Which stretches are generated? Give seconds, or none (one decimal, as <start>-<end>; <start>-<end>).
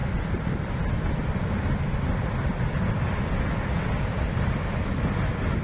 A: none